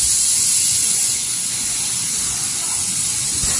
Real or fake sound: fake